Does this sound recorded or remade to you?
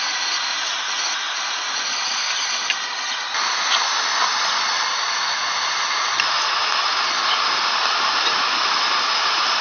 recorded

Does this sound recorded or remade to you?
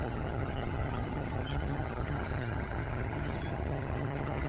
remade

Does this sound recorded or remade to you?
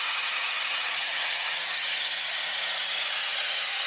remade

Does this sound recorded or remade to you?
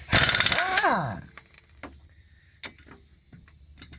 recorded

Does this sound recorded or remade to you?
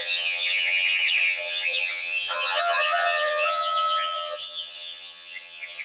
remade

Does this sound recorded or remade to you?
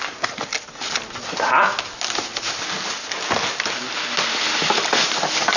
recorded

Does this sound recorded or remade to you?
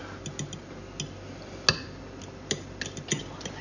recorded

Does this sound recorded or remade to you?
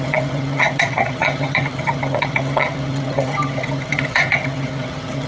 remade